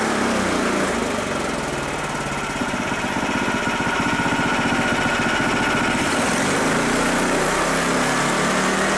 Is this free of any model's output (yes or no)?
yes